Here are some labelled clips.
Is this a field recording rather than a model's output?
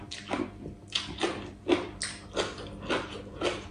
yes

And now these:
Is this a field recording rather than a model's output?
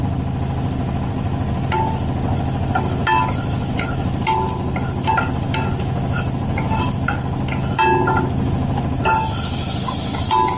yes